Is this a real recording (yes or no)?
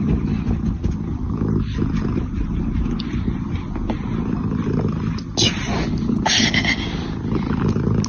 yes